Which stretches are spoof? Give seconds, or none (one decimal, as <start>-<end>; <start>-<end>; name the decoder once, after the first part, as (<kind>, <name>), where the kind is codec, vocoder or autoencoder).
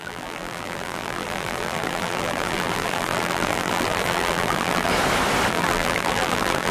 0.0-4.9 (vocoder, BigVGAN v2); 5.5-6.7